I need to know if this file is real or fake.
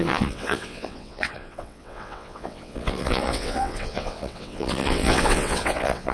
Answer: fake